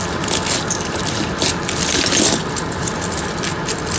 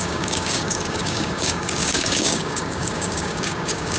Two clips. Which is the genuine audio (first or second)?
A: first